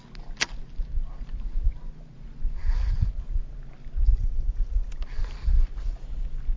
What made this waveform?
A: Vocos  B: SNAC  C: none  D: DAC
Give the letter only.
C